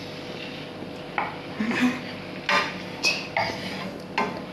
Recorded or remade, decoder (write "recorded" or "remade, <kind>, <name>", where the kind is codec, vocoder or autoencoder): recorded